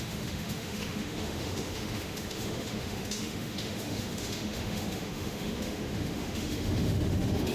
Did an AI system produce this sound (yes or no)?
yes